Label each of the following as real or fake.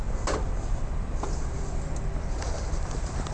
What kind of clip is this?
real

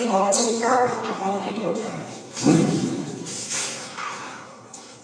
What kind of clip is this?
fake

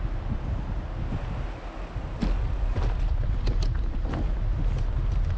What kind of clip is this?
real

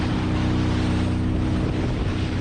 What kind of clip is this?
real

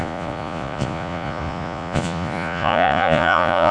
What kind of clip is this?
fake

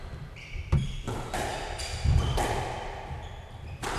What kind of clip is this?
fake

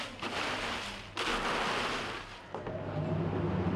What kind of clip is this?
real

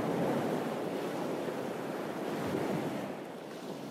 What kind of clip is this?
real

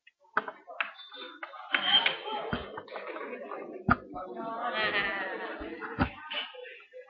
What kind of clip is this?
real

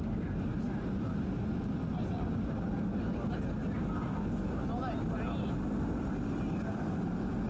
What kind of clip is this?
real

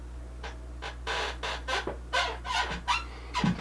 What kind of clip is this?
real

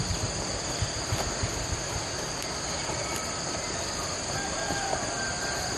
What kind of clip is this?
real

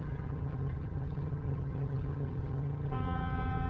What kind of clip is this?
fake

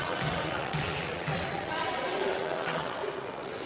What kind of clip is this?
fake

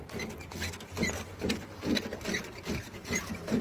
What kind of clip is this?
real